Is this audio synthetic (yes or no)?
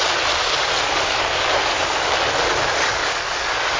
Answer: yes